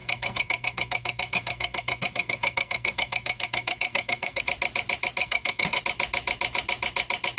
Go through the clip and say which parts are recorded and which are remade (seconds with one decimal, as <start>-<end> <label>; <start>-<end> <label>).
0.0-4.4 remade; 4.4-5.2 recorded; 5.2-5.8 remade; 5.8-7.4 recorded